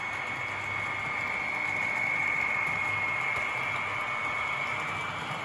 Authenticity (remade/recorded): recorded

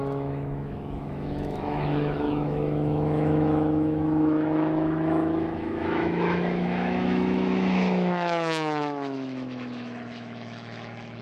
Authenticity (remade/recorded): remade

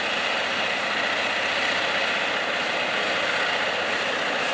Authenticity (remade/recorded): recorded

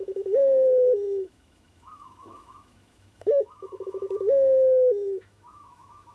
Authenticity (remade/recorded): remade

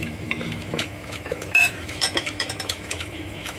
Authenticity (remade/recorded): remade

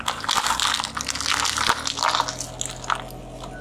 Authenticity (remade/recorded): recorded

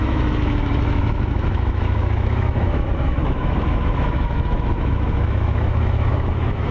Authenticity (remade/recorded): remade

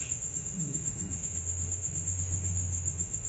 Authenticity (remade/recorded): remade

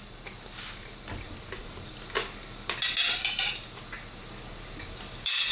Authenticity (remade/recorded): recorded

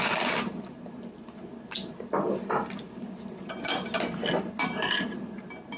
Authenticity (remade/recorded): recorded